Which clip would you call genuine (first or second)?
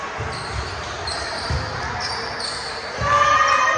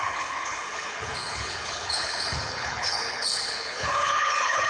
first